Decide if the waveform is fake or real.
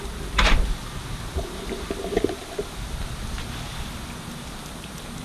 real